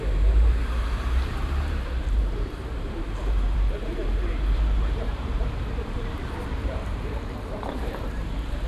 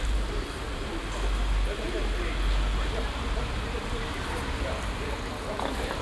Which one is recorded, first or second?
second